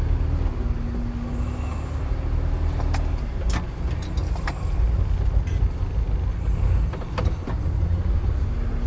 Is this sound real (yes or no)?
yes